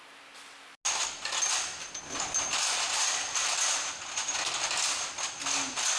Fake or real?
real